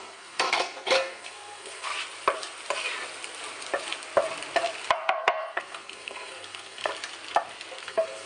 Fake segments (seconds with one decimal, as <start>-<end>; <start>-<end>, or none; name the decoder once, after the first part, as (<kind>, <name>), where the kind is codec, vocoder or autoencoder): 0.0-1.9 (codec, SNAC); 4.9-6.9; 7.8-8.3

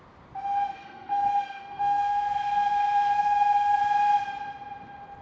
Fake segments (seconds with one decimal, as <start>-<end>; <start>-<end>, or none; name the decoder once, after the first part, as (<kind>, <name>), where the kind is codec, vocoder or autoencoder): 0.7-3.8 (codec, SNAC)

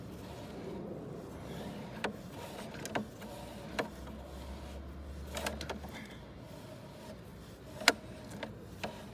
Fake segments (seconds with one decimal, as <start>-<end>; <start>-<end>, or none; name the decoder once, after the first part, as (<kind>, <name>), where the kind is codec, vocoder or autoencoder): none

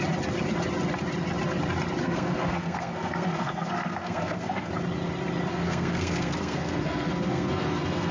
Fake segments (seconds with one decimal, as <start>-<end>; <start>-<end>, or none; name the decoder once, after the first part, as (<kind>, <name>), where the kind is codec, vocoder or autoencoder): 2.0-4.7 (codec, SNAC); 5.5-8.1

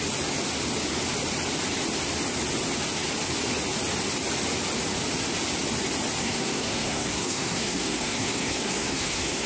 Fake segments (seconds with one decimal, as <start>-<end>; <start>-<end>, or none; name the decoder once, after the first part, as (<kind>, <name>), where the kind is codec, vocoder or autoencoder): 6.2-9.5 (codec, SNAC)

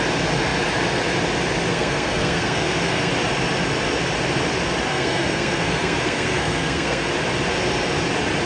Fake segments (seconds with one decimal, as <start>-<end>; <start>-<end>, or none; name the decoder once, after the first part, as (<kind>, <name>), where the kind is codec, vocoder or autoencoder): 1.7-3.1 (codec, SNAC); 4.9-7.1

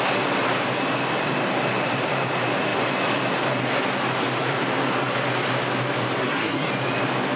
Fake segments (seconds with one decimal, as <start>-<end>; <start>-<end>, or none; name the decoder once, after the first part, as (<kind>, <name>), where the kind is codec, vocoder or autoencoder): 6.2-6.7 (codec, SNAC)

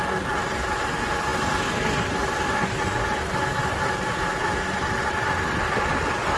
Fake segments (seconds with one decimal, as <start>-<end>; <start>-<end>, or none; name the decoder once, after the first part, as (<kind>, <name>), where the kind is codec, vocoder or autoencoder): none